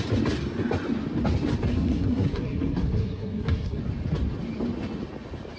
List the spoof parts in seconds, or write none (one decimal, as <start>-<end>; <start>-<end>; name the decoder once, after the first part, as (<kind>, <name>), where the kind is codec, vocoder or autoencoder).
1.7-3.8 (codec, SNAC)